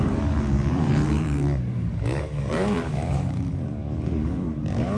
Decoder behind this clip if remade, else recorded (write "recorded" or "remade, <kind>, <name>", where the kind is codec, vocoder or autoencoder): remade, codec, DAC